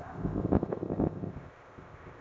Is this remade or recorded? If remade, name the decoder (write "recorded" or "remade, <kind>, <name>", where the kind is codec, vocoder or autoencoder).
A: remade, codec, ZipCodec